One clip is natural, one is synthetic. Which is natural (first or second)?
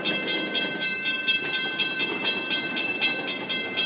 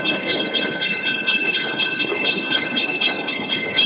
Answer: first